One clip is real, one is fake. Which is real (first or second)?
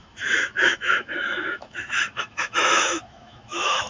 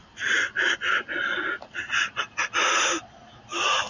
second